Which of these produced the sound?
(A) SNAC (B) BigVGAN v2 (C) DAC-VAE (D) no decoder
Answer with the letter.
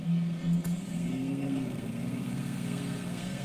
A